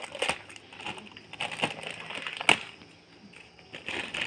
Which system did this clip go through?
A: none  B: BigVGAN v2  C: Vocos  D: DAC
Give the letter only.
A